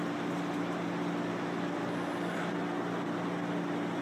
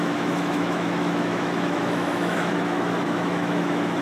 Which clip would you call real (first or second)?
first